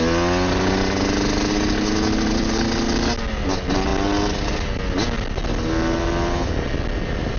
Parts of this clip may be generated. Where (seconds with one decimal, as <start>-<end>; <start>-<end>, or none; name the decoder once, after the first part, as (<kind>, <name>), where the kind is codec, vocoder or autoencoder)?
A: none